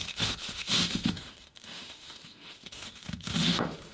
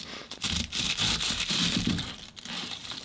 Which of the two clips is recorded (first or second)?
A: second